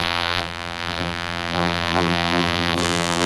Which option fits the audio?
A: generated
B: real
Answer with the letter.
A